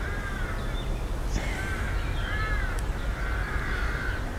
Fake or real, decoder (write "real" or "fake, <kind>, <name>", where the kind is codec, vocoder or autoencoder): real